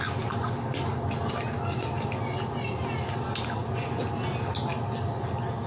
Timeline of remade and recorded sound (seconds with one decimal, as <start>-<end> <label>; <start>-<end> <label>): 0.0-5.7 recorded